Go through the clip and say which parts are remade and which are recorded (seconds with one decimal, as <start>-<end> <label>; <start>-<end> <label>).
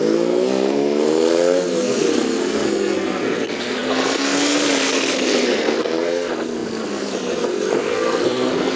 0.0-8.8 remade